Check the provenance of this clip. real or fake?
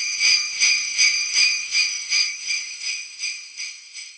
fake